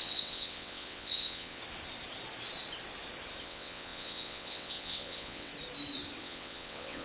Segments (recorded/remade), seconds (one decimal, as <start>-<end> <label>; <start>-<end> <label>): 0.0-1.6 remade; 1.6-3.4 recorded; 3.4-5.5 remade; 5.5-6.2 recorded; 6.2-7.0 remade